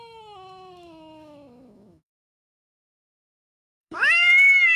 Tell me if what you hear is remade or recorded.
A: remade